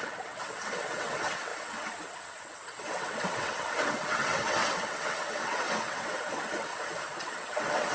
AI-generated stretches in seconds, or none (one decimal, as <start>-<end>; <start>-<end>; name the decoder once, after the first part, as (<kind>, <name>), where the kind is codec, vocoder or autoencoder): 0.0-6.7 (vocoder, WaveNeXt); 7.2-7.9